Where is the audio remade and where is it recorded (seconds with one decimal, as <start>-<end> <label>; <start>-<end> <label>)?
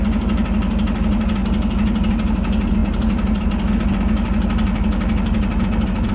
0.0-2.8 recorded; 2.8-3.5 remade; 3.5-6.1 recorded